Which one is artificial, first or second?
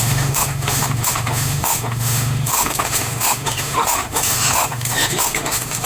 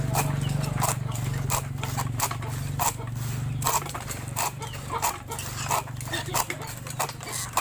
first